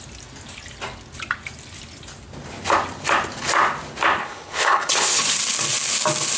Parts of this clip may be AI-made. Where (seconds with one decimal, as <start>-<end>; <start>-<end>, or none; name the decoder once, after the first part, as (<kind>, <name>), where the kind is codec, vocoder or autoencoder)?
4.2-5.2 (codec, HILCodec)